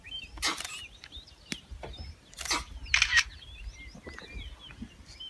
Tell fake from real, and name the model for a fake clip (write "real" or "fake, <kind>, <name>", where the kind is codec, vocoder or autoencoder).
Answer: real